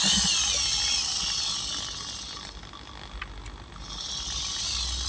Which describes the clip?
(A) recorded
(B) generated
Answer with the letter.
A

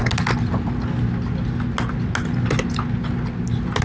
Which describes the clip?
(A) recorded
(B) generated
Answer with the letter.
A